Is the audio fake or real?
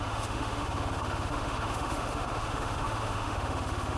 fake